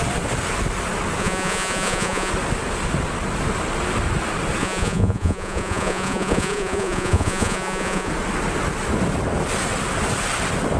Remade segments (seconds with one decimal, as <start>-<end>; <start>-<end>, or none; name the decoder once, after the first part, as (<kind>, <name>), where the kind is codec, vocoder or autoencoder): 1.2-2.3 (vocoder, Vocos); 4.6-8.1